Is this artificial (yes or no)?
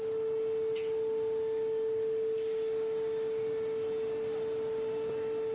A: no